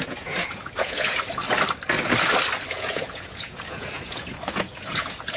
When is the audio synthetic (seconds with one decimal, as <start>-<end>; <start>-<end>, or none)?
0.0-1.4; 2.7-5.4